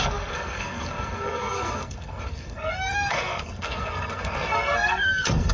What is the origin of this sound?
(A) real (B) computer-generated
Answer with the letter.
B